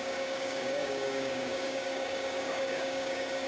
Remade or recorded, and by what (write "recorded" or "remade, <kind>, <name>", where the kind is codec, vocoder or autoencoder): remade, codec, DAC